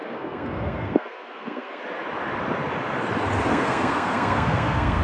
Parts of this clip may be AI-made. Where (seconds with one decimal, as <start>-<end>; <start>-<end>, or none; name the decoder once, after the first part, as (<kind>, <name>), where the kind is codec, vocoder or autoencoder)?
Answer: 0.0-1.8 (codec, SNAC); 3.5-5.0